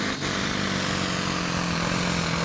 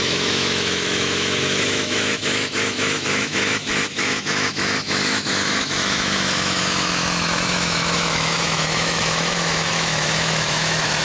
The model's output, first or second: second